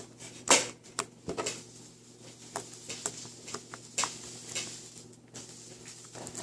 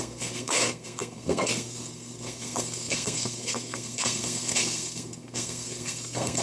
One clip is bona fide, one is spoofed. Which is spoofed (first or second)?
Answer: second